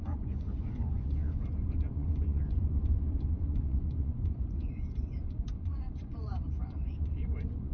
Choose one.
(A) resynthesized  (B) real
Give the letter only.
A